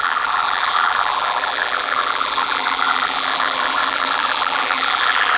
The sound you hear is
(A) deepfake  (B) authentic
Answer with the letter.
A